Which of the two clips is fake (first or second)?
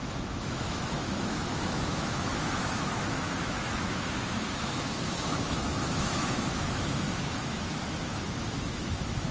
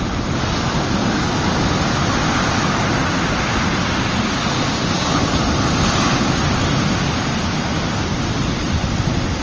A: first